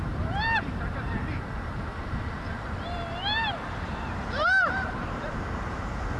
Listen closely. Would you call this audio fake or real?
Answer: fake